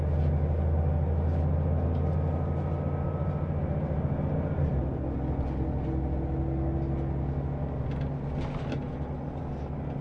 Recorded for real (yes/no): yes